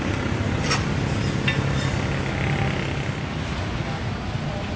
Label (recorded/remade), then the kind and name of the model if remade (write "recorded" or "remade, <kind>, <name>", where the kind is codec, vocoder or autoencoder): recorded